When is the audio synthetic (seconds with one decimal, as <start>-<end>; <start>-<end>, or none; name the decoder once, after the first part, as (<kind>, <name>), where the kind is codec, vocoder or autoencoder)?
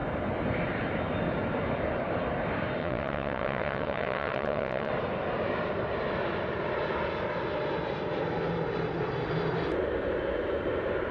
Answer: 2.8-4.9 (vocoder, WaveNeXt)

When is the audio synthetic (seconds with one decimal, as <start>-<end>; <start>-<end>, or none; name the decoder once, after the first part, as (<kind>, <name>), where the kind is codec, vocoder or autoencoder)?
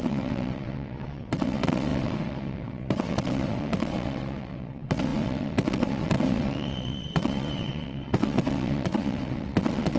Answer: 0.0-10.0 (vocoder, WaveNeXt)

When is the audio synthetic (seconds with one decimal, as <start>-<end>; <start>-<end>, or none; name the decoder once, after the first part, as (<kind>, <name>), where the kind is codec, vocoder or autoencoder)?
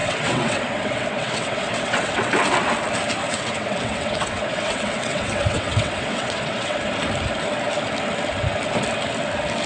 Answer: 0.0-2.3 (vocoder, WaveNeXt); 3.2-6.8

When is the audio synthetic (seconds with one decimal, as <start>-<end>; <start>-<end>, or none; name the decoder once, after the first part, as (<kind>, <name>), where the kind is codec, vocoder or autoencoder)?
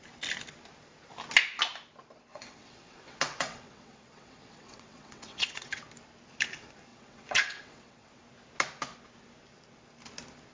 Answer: 2.3-5.8 (vocoder, WaveNeXt); 6.9-8.2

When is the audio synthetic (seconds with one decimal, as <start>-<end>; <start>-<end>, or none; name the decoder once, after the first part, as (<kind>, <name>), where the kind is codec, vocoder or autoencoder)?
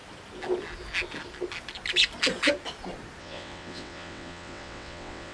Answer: 3.2-5.3 (vocoder, WaveNeXt)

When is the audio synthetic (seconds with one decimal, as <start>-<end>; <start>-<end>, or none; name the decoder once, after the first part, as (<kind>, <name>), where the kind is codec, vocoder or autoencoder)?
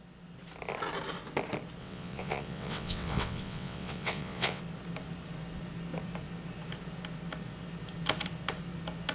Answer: 1.8-4.6 (vocoder, WaveNeXt)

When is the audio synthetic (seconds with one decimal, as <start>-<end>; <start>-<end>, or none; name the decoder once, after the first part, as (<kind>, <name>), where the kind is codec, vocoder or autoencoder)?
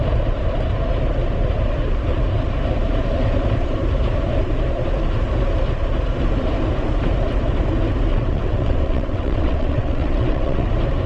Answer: 8.1-10.7 (vocoder, WaveNeXt)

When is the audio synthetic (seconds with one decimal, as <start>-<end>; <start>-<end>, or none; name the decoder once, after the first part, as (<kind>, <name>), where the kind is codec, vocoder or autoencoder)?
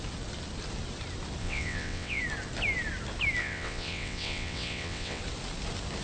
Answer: 1.4-2.2 (vocoder, WaveNeXt); 3.4-5.2